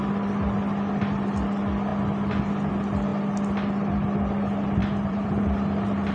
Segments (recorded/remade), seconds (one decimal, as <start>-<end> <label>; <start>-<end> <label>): 0.0-4.8 recorded; 4.8-5.4 remade; 5.4-6.1 recorded